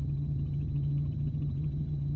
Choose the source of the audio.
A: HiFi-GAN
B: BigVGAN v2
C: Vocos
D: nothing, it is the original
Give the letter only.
A